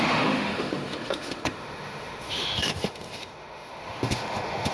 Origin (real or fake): fake